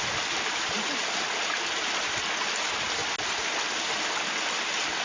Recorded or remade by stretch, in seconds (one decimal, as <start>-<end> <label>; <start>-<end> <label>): 0.0-5.0 recorded